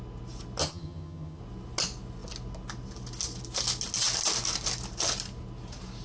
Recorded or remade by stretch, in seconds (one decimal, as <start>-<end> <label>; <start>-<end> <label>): 0.0-0.6 recorded; 0.6-1.4 remade; 1.4-6.0 recorded